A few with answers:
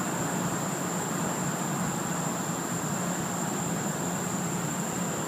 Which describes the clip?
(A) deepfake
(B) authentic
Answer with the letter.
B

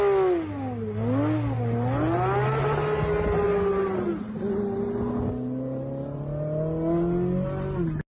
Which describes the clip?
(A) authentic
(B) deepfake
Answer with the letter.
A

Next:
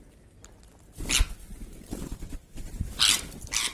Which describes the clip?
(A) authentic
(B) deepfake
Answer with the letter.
A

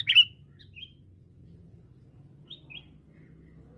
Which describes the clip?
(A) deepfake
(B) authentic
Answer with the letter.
B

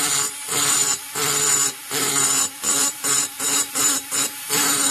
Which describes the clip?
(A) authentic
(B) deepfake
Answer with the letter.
B